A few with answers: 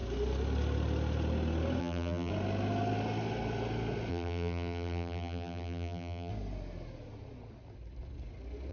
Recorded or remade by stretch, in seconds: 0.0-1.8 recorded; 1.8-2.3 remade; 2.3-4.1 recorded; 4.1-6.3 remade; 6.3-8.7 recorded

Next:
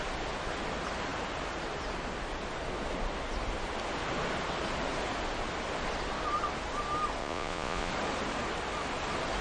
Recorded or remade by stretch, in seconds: 0.0-7.2 recorded; 7.2-7.9 remade; 7.9-9.4 recorded

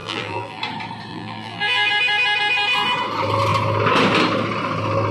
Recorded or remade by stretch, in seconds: 0.0-0.6 remade; 0.6-1.1 recorded; 1.1-1.9 remade; 1.9-5.1 recorded

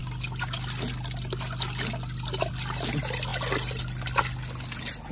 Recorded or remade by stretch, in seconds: 0.0-5.1 recorded

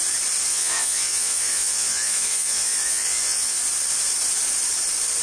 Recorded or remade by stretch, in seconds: 0.0-0.5 recorded; 0.5-3.6 remade; 3.6-5.2 recorded

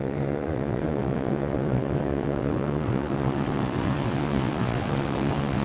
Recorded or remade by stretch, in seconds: 0.0-5.6 remade

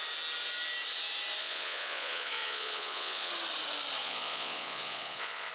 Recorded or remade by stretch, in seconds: 0.0-1.4 recorded; 1.4-3.3 remade; 3.3-4.0 recorded; 4.0-5.5 remade